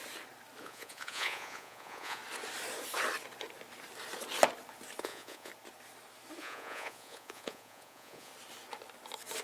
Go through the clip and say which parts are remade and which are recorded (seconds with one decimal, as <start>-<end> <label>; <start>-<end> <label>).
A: 0.0-0.6 recorded; 0.6-2.2 remade; 2.2-5.0 recorded; 5.0-5.5 remade; 5.5-6.4 recorded; 6.4-8.3 remade; 8.3-9.4 recorded